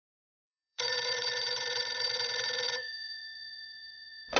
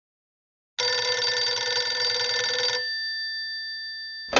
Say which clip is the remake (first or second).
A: first